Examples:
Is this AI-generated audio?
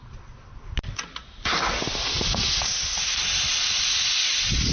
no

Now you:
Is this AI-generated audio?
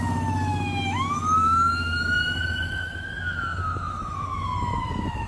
yes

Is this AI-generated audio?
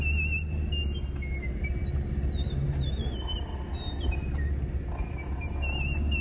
no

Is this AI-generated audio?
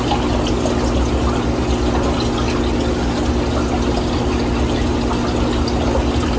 no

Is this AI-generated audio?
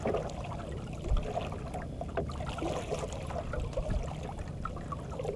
no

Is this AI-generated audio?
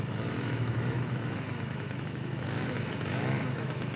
yes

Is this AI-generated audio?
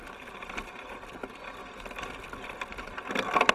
no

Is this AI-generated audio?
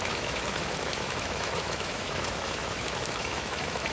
yes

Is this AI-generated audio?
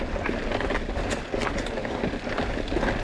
no